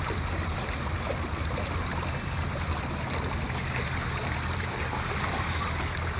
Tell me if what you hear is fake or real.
fake